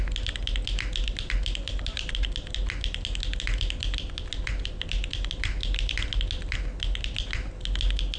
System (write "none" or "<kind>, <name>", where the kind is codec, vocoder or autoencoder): none